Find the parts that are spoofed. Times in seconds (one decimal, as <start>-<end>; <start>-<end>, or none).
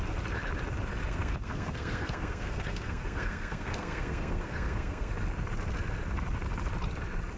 1.0-5.1